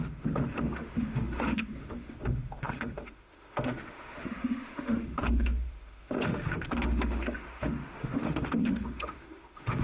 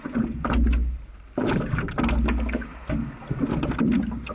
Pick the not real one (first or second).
first